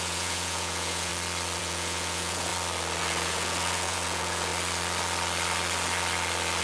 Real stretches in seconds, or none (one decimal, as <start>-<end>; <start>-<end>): 1.1-1.6; 2.5-3.0; 4.5-6.6